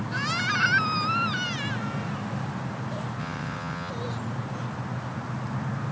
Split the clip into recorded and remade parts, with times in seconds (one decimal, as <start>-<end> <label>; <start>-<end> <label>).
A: 0.0-3.2 recorded; 3.2-3.9 remade; 3.9-5.9 recorded